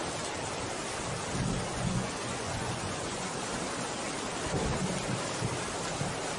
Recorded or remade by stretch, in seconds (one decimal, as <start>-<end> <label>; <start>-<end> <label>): 0.0-1.7 recorded; 1.7-3.3 remade; 3.3-6.4 recorded